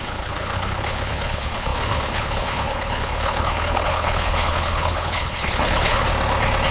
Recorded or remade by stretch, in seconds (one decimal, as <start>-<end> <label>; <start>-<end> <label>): 0.0-6.1 remade; 6.1-6.7 recorded